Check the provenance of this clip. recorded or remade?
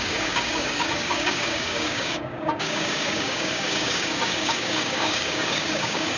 remade